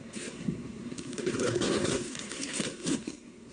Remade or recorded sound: remade